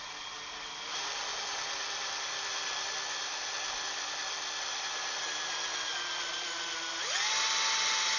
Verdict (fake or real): real